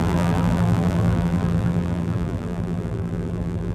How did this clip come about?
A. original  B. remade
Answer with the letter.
B